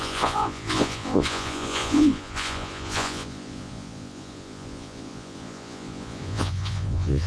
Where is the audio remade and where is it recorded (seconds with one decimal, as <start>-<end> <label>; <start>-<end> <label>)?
0.0-7.3 remade